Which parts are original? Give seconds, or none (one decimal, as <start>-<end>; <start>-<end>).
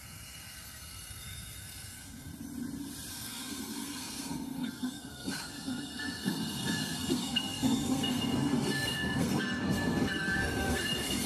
2.3-3.1